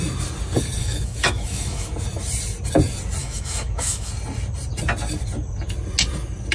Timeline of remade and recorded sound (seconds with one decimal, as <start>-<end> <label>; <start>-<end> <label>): 0.0-0.8 recorded; 0.8-1.9 remade; 1.9-3.2 recorded; 3.2-4.1 remade; 4.1-6.5 recorded

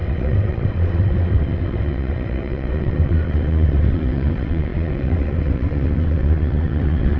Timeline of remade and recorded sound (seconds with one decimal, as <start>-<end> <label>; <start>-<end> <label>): 0.0-7.2 remade

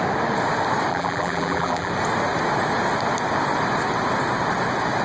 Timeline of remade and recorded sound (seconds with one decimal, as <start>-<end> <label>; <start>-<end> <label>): 0.0-0.9 recorded; 0.9-1.9 remade; 1.9-5.0 recorded

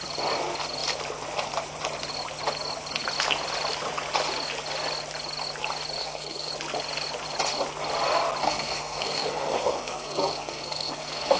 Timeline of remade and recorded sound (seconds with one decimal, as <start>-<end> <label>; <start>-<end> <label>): 0.0-6.0 recorded; 6.0-6.5 remade; 6.5-8.4 recorded; 8.4-11.4 remade

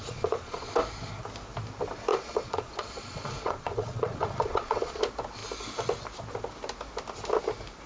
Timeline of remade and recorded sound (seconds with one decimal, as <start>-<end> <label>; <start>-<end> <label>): 0.0-0.7 remade; 0.7-2.1 recorded; 2.1-5.0 remade; 5.0-7.9 recorded

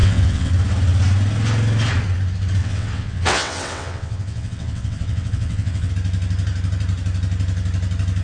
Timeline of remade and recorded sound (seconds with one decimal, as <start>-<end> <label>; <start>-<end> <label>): 0.0-0.5 remade; 0.5-2.6 recorded; 2.6-5.9 remade; 5.9-8.2 recorded

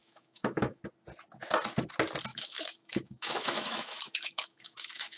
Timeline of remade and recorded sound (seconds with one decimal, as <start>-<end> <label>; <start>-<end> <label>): 0.0-0.8 remade; 0.8-2.3 recorded; 2.3-5.2 remade